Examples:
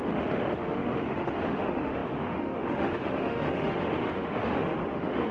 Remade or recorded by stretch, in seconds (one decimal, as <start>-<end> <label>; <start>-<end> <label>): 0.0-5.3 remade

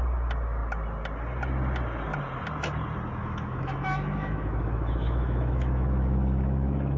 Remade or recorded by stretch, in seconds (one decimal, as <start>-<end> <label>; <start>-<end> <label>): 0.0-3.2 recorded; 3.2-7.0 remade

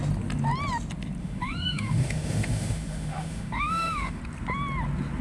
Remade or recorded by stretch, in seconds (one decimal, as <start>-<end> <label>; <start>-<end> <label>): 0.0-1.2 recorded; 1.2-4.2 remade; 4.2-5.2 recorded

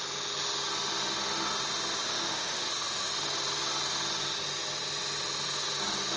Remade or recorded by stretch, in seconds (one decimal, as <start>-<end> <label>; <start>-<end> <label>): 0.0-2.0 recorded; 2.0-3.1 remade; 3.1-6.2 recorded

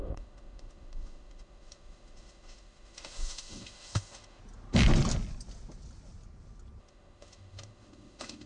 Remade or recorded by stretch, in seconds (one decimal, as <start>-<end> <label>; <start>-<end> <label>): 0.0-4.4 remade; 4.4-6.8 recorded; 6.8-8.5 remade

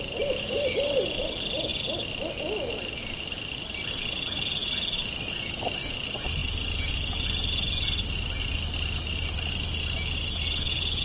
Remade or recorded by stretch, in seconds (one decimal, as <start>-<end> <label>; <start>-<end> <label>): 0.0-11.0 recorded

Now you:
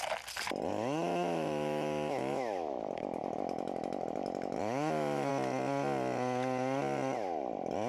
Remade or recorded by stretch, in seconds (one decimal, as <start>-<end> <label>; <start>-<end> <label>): 0.0-0.7 recorded; 0.7-5.3 remade; 5.3-7.9 recorded